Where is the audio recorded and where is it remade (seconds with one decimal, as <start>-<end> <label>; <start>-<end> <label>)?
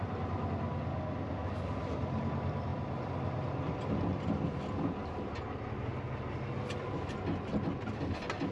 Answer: 0.0-1.4 recorded; 1.4-2.0 remade; 2.0-2.7 recorded; 2.7-4.6 remade; 4.6-8.5 recorded